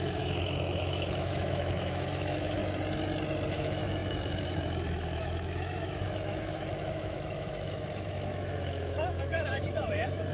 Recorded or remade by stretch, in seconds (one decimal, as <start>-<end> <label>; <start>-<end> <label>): 0.0-2.6 remade; 2.6-3.5 recorded; 3.5-10.3 remade